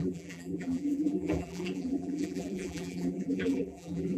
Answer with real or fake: fake